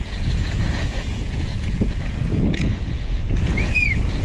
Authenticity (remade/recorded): remade